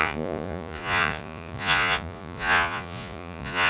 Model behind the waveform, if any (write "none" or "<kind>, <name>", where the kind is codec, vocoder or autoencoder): vocoder, Vocos